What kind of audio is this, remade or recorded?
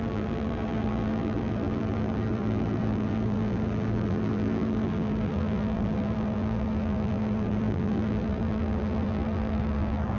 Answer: remade